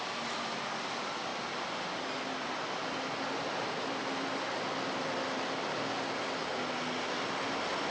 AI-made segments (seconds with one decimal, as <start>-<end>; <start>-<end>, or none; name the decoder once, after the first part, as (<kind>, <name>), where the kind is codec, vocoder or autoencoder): none